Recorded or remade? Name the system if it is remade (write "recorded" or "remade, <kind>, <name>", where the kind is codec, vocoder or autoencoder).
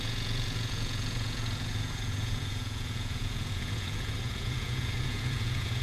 remade, vocoder, Vocos